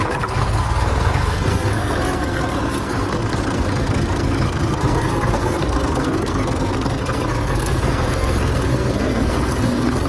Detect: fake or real fake